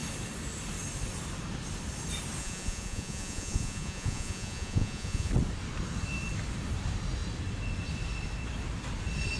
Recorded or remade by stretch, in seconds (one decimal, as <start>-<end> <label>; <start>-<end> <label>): 0.0-2.4 recorded; 2.4-5.3 remade; 5.3-9.4 recorded